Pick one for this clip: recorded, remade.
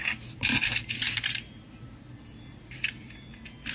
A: recorded